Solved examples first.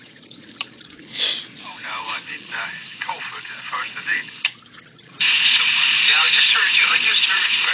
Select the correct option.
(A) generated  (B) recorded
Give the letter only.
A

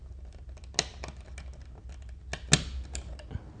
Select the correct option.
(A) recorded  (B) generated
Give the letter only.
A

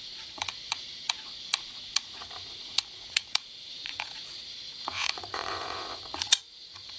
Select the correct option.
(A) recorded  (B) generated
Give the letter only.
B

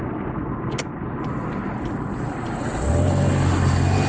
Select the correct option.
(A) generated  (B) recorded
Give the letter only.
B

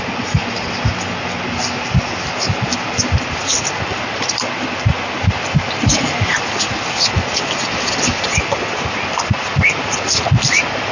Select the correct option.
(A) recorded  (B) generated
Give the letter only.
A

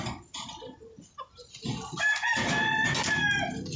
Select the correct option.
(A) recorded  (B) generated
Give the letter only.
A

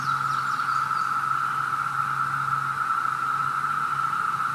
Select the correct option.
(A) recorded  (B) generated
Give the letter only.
A